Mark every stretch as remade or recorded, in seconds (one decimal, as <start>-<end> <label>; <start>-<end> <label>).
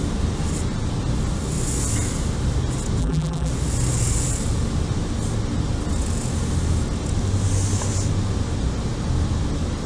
0.0-3.0 recorded; 3.0-3.5 remade; 3.5-9.9 recorded